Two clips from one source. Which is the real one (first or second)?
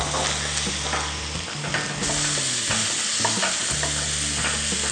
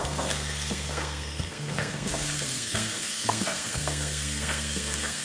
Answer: first